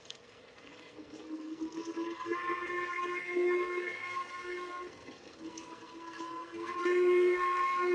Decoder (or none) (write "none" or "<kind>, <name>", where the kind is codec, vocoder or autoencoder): codec, SNAC